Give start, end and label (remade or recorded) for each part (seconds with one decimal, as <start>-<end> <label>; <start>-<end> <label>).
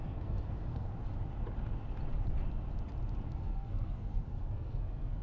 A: 0.0-0.9 remade; 0.9-3.3 recorded; 3.3-5.2 remade